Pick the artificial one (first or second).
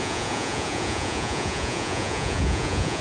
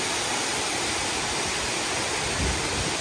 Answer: first